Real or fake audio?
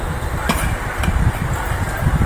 fake